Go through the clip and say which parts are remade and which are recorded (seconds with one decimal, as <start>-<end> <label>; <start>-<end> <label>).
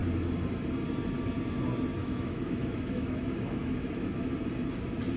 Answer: 0.0-2.0 recorded; 2.0-4.3 remade; 4.3-5.2 recorded